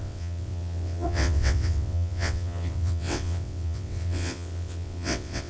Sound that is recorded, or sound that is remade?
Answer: remade